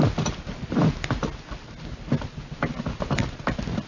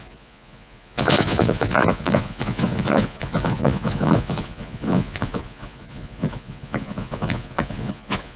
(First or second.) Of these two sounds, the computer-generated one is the second